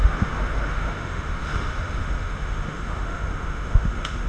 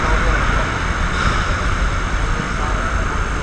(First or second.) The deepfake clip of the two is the first